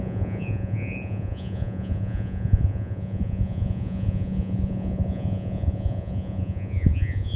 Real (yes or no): no